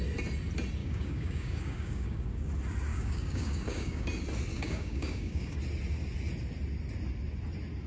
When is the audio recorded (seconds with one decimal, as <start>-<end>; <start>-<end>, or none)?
0.0-0.8; 2.5-2.9; 4.1-4.5; 5.6-7.9

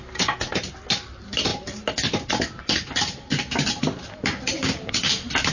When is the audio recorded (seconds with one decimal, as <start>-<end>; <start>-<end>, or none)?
0.0-4.6; 5.1-5.5

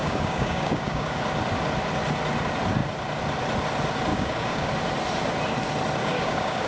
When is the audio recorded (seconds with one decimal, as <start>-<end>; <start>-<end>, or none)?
1.2-4.1; 4.7-6.0

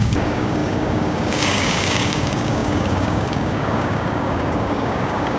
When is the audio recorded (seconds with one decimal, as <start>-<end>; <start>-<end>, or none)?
none

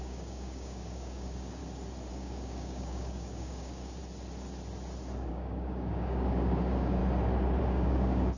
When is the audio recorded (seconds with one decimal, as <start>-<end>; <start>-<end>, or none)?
1.6-2.1; 4.0-5.3; 7.0-7.6

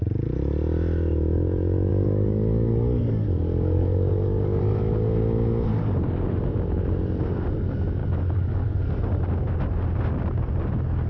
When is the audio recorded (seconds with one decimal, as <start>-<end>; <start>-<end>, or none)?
0.0-1.9; 4.6-5.7; 6.2-8.0; 8.8-11.1

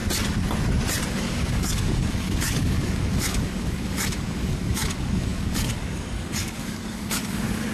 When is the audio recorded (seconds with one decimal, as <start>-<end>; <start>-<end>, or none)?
0.0-1.1